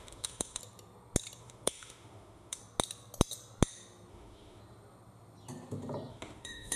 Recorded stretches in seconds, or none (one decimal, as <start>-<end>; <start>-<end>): 0.6-1.4; 2.6-4.1; 4.6-6.1